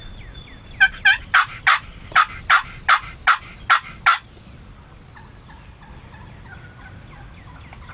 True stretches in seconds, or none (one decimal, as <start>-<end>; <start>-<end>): 0.0-7.9